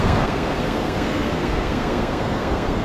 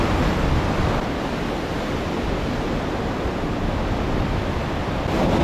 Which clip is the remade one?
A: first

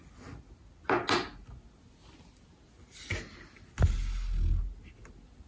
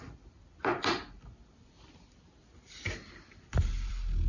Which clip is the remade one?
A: second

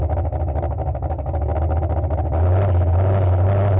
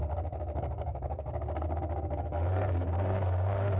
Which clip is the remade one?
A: second